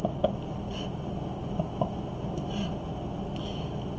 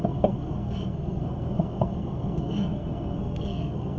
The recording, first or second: first